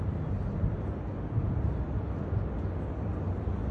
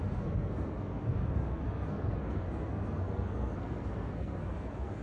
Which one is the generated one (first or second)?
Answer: second